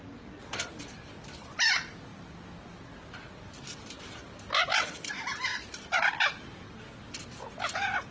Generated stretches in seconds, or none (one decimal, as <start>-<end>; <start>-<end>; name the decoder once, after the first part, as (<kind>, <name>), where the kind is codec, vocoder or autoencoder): none